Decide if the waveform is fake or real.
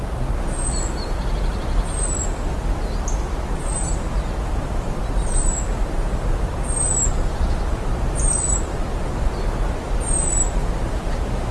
real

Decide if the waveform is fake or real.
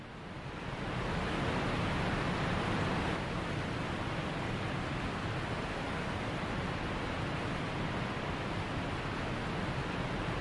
real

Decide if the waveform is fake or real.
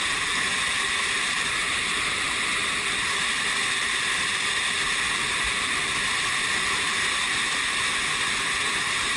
real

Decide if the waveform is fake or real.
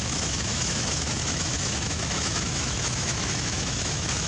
fake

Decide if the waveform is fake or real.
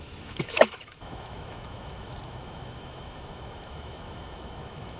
fake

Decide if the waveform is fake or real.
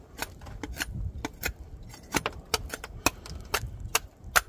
real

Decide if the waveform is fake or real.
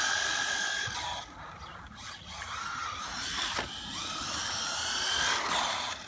real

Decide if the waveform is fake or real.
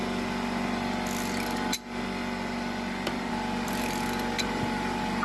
real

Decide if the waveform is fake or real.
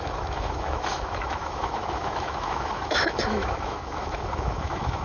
fake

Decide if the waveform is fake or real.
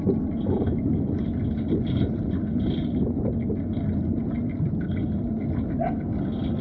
real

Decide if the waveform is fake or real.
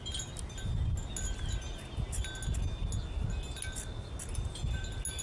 real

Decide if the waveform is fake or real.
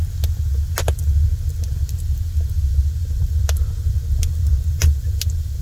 real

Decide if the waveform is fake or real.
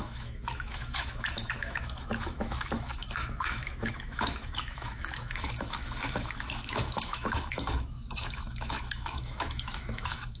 fake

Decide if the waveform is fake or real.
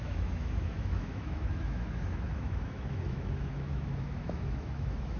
fake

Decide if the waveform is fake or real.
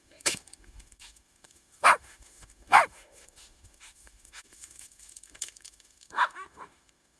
fake